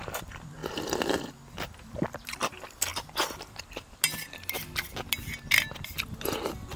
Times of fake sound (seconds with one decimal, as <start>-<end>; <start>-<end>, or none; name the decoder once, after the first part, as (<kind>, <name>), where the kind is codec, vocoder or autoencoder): 0.0-2.9 (vocoder, BigVGAN v2); 5.7-6.8